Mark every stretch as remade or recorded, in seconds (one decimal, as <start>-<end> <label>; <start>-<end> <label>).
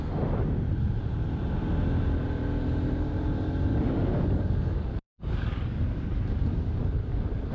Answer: 0.0-3.7 recorded; 3.7-7.5 remade